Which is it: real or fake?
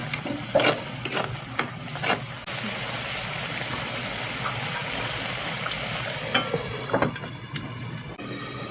real